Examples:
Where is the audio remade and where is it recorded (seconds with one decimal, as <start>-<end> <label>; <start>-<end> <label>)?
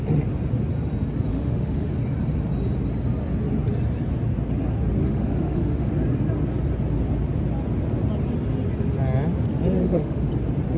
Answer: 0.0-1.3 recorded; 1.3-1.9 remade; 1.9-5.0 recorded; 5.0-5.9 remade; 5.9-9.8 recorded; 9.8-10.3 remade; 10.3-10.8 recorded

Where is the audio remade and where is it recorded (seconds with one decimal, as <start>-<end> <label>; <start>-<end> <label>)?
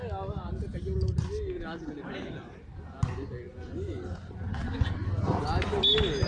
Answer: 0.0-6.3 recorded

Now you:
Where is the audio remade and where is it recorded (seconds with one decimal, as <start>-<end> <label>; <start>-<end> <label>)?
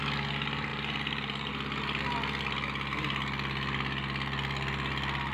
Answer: 0.0-0.7 recorded; 0.7-1.5 remade; 1.5-5.3 recorded